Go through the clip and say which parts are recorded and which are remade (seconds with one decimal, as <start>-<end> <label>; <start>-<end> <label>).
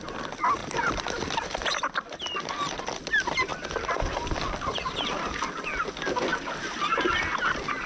0.0-0.6 recorded; 0.6-3.0 remade; 3.0-3.5 recorded; 3.5-5.3 remade; 5.3-7.9 recorded